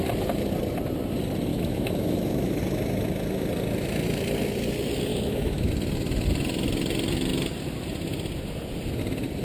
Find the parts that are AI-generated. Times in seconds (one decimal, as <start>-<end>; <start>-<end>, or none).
1.5-2.6; 5.1-5.7